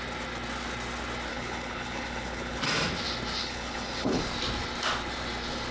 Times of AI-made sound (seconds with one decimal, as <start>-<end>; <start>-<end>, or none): 1.3-2.6; 3.4-4.2